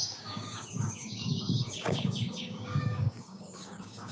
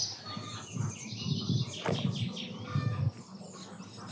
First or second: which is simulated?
first